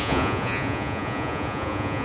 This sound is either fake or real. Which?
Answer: fake